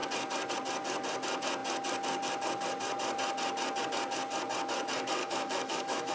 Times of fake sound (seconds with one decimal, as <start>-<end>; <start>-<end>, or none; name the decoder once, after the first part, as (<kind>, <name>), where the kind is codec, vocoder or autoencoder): 5.2-6.1 (autoencoder, DAC-VAE)